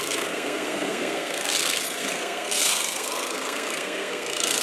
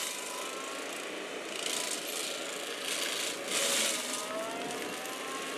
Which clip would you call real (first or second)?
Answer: second